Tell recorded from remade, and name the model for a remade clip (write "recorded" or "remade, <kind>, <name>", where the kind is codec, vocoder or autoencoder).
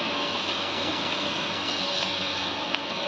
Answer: remade, codec, SNAC